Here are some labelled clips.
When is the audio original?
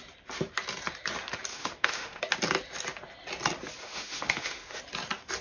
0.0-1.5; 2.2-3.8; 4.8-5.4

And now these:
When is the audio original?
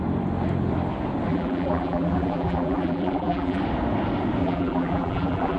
0.0-1.3; 3.6-4.4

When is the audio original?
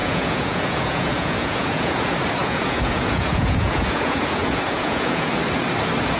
2.0-2.4; 5.3-6.2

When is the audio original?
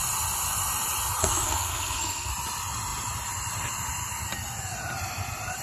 0.0-1.2; 2.3-5.6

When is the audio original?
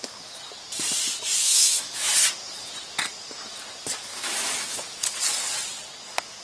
0.0-1.4; 2.1-4.1; 4.8-6.4